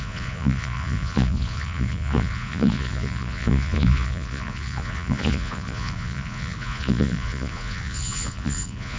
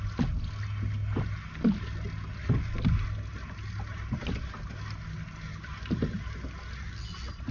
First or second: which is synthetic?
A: first